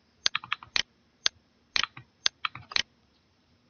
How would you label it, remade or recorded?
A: remade